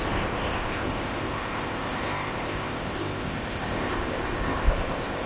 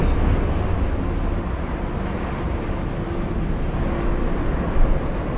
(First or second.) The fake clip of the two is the first